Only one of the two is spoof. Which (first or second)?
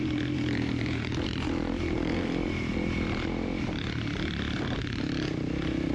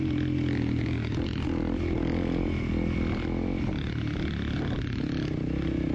first